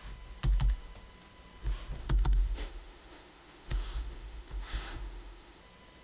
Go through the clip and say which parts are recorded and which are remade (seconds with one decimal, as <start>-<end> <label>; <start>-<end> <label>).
0.0-2.0 recorded; 2.0-5.6 remade; 5.6-6.0 recorded